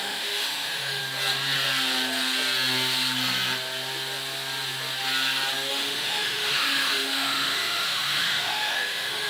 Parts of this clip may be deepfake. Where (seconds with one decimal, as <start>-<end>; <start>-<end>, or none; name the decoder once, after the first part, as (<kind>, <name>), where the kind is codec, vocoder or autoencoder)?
0.0-1.0 (autoencoder, DAC-VAE); 5.7-9.3